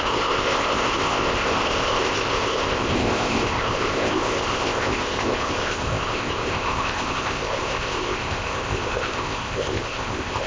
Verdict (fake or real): fake